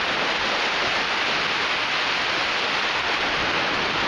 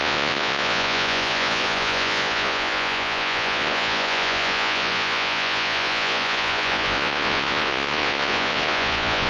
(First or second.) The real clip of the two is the first